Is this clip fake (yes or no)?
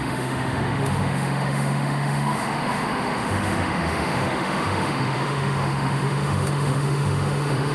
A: yes